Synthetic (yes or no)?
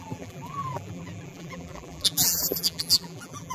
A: yes